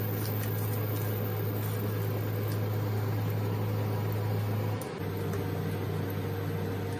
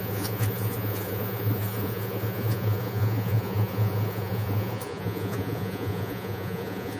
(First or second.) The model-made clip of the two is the second